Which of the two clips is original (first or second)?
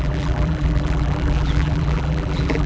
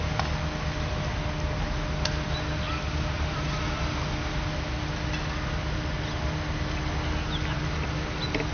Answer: second